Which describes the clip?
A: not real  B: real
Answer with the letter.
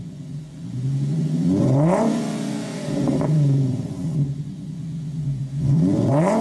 A